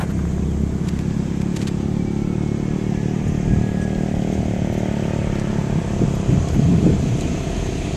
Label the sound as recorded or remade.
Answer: recorded